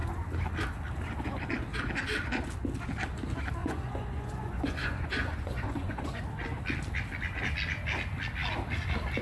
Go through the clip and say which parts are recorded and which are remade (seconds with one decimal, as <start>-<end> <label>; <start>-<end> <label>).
0.0-3.6 recorded; 3.6-6.2 remade; 6.2-9.2 recorded